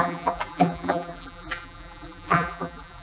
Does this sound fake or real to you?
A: fake